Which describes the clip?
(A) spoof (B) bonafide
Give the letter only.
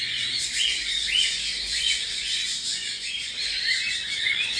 A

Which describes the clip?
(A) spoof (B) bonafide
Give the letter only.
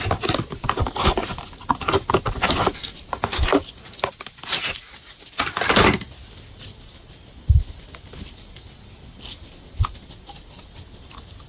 B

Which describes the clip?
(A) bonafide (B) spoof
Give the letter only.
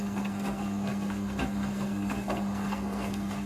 B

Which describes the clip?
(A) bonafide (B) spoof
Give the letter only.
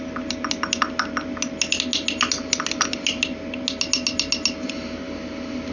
A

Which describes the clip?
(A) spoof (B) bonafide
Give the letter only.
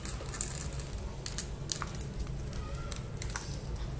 B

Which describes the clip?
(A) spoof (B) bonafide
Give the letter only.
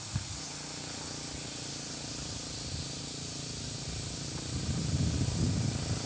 B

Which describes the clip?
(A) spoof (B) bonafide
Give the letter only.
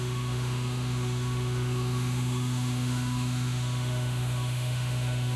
A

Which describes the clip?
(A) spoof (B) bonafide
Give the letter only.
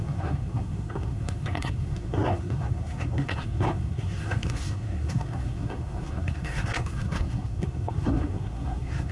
A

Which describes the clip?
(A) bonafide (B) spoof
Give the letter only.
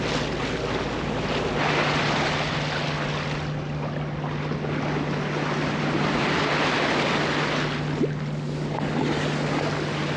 A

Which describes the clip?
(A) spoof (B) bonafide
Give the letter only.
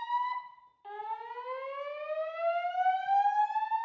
B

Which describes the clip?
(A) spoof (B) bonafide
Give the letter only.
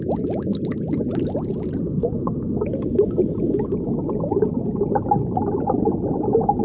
B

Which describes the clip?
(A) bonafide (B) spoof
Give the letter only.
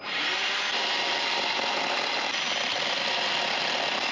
A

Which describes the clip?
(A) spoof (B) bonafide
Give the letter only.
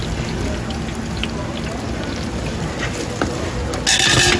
B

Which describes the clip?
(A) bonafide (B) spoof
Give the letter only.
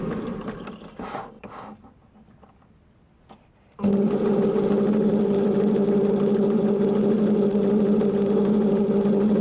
A